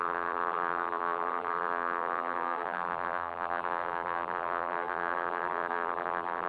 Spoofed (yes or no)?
yes